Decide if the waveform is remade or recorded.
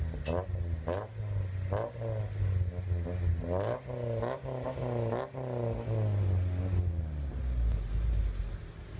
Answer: recorded